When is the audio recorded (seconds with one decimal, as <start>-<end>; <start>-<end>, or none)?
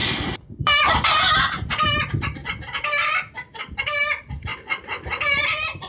0.0-0.6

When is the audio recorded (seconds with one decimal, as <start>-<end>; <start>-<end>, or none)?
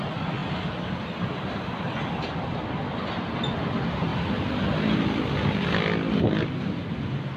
0.0-7.4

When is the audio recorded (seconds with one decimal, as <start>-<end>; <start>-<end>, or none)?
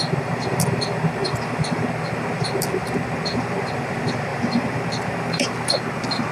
0.0-1.2; 1.8-4.3; 5.5-6.3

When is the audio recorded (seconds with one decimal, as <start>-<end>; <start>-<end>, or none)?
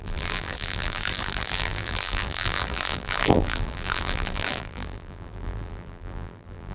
none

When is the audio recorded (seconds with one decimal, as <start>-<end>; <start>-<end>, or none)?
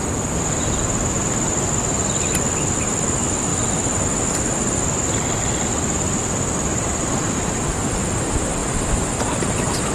0.0-9.9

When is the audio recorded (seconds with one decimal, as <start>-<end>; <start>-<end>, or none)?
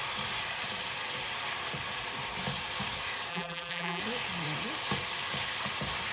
0.0-3.3; 4.0-6.1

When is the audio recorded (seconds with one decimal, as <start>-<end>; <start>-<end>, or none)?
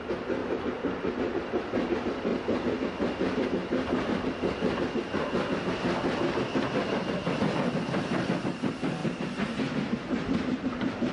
0.0-0.4; 1.1-9.0